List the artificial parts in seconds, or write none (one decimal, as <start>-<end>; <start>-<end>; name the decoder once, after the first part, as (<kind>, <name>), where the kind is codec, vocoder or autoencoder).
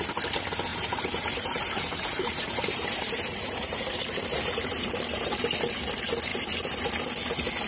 0.7-5.3 (vocoder, BigVGAN v2)